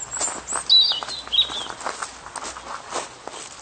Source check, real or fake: real